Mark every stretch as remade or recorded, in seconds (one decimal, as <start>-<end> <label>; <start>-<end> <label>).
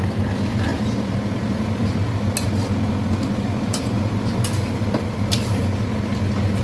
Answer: 0.0-1.8 remade; 1.8-3.4 recorded; 3.4-5.6 remade; 5.6-6.6 recorded